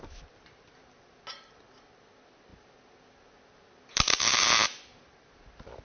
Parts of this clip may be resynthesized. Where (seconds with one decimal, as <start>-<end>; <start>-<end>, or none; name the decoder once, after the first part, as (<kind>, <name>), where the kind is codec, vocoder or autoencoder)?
none